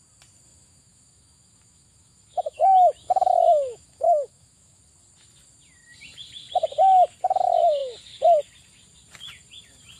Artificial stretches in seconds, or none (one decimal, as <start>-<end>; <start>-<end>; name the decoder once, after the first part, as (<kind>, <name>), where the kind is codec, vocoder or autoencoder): 0.5-4.8 (autoencoder, DAC-VAE)